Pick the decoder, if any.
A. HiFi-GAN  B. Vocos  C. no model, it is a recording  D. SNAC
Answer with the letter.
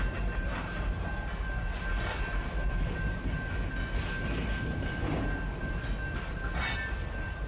C